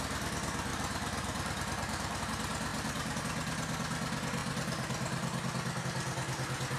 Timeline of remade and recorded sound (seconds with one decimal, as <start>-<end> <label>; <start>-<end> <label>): 0.0-0.7 recorded; 0.7-2.2 remade; 2.2-2.7 recorded; 2.7-3.2 remade; 3.2-6.8 recorded